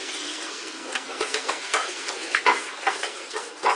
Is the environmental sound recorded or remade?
remade